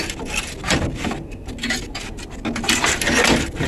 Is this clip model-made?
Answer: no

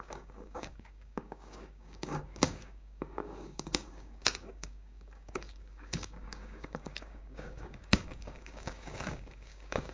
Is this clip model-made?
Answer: yes